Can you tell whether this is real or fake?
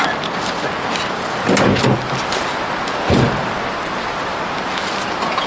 real